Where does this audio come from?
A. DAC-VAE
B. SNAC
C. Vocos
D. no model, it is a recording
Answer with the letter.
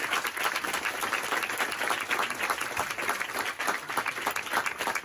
D